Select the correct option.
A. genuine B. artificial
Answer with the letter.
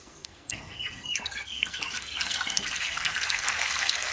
B